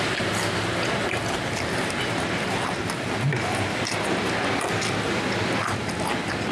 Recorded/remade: recorded